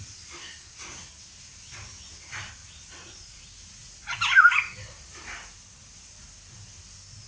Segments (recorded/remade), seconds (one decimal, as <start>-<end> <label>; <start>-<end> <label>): 0.0-2.6 recorded; 2.6-3.4 remade; 3.4-7.3 recorded